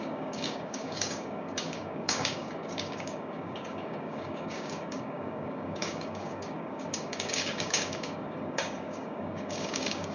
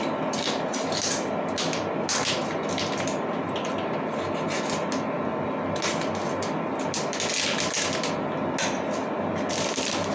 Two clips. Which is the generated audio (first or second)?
first